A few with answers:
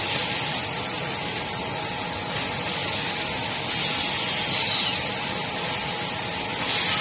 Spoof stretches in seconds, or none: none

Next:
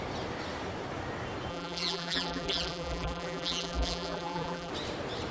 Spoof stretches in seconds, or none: 1.5-4.7 (vocoder, BigVGAN v2)

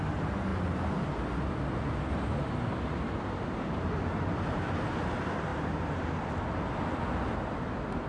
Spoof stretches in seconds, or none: 2.7-4.9 (vocoder, BigVGAN v2); 5.5-6.1

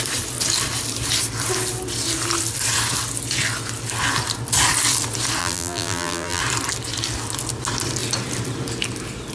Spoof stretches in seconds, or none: 5.4-6.4 (vocoder, BigVGAN v2)